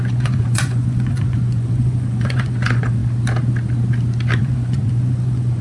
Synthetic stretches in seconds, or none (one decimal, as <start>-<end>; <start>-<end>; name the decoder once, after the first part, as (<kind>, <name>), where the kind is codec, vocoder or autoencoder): 0.0-3.0 (vocoder, Vocos); 4.4-5.6